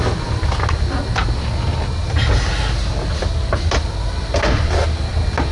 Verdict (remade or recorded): recorded